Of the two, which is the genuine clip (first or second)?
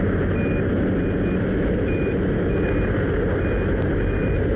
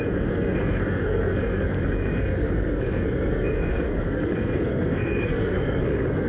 first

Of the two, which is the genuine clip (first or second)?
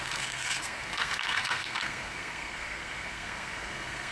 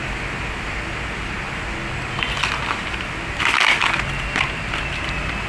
second